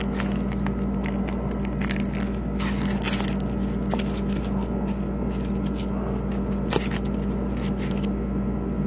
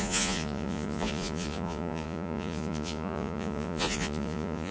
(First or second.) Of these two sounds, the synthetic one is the second